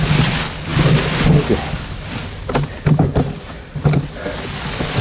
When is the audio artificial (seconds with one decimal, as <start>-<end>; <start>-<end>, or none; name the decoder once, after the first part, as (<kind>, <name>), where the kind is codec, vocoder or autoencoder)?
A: none